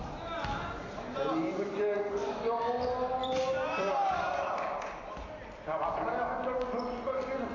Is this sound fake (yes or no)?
no